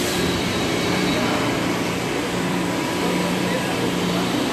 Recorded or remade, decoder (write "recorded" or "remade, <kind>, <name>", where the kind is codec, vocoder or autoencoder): remade, vocoder, BigVGAN v2